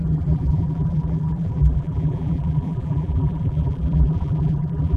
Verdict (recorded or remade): remade